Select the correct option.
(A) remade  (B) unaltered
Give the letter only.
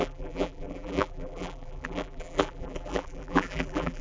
A